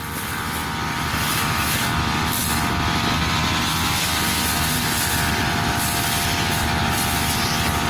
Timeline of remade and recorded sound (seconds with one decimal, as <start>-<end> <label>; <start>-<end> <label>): 0.0-7.9 recorded